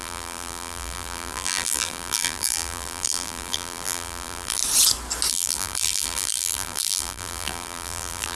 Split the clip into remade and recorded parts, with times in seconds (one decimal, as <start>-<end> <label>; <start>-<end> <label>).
0.0-4.6 remade; 4.6-5.3 recorded; 5.3-8.4 remade